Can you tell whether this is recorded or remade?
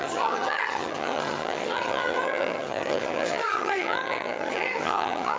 remade